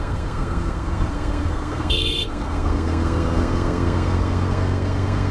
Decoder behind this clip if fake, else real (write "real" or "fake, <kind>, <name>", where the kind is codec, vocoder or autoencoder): fake, codec, SNAC